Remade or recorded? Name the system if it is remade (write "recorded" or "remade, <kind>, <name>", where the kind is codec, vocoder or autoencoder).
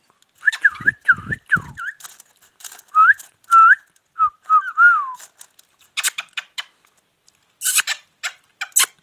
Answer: recorded